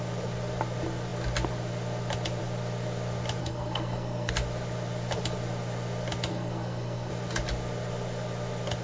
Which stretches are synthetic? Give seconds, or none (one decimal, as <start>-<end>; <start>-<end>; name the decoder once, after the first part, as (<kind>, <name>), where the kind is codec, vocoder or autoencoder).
3.4-4.3 (codec, SNAC); 6.3-7.1